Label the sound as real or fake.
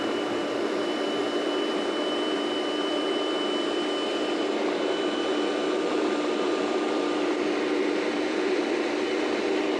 fake